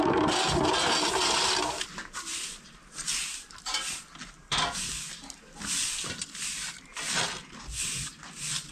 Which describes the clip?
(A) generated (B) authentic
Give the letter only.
B